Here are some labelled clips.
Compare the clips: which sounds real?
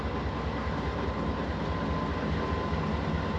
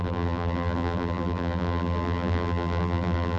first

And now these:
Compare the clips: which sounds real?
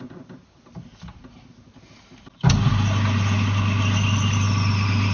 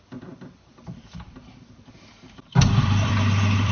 first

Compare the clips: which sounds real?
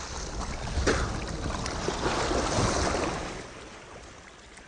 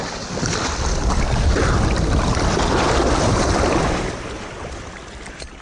first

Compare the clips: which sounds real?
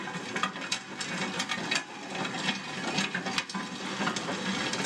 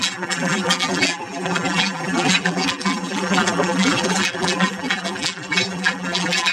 first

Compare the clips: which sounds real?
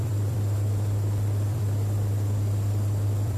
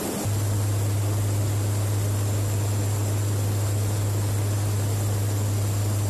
second